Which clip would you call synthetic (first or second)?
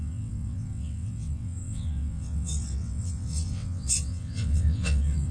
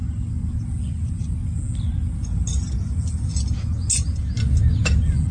first